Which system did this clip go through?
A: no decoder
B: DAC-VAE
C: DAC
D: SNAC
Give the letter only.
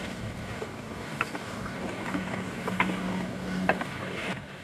C